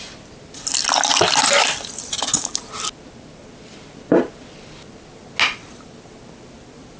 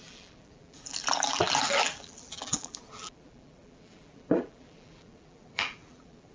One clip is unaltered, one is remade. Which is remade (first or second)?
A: second